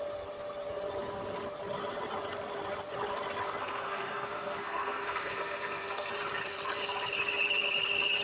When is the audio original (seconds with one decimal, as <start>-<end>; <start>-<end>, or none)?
0.0-3.6; 6.1-8.2